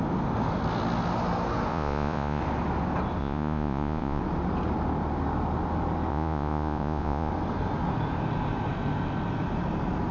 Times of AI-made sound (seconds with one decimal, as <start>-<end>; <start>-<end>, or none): 1.7-2.4; 3.2-4.2; 6.1-7.3